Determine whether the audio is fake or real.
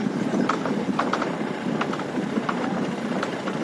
fake